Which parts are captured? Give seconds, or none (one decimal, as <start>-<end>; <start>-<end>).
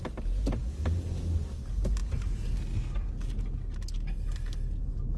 0.0-0.6; 1.2-5.2